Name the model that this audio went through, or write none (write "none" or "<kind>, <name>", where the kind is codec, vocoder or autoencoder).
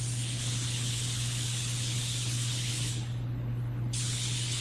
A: codec, HILCodec